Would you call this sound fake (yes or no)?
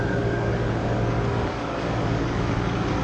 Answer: yes